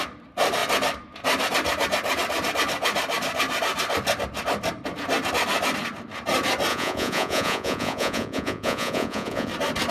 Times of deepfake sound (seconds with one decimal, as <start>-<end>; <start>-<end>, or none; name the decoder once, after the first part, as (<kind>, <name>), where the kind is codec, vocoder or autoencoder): 6.7-9.5 (vocoder, Vocos)

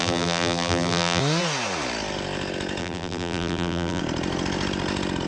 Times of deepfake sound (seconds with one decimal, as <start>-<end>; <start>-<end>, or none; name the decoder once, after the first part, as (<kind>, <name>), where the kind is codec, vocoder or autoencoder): 0.0-1.2 (vocoder, BigVGAN v2); 2.8-4.0

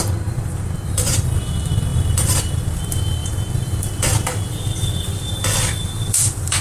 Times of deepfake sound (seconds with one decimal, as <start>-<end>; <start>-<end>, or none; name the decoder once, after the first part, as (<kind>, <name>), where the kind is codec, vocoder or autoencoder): 0.0-6.6 (vocoder, BigVGAN v2)

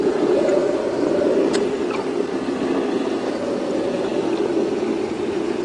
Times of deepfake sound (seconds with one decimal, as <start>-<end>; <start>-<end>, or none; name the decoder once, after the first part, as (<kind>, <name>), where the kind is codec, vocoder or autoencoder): 0.0-0.6 (vocoder, Vocos); 3.3-4.1; 4.7-5.6

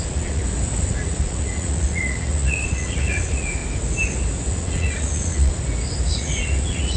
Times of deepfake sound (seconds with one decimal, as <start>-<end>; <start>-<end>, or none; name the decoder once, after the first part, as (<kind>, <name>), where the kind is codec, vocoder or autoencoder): 0.0-0.4 (vocoder, Vocos); 0.9-3.6; 4.5-5.5; 6.1-7.0

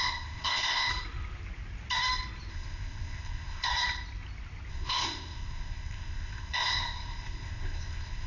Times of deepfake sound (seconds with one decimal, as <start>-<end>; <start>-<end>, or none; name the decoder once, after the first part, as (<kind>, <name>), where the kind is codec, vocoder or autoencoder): 0.0-0.9 (codec, ZipCodec); 2.5-3.7; 4.7-8.3

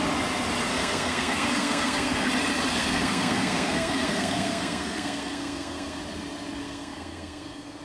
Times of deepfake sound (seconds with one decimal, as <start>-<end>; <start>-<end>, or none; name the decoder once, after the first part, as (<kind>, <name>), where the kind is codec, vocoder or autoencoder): 0.7-2.3 (codec, SNAC); 2.7-6.0; 6.6-7.8